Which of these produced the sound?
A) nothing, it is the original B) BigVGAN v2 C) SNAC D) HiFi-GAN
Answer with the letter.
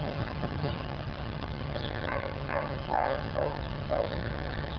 D